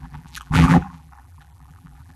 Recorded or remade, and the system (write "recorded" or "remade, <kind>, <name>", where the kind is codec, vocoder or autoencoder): remade, vocoder, BigVGAN v2